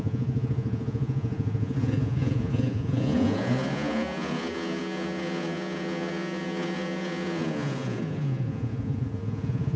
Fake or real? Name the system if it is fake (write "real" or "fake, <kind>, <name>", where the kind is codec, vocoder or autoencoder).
fake, vocoder, Vocos